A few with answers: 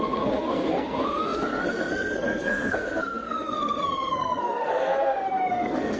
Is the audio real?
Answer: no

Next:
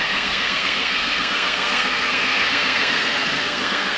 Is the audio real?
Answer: no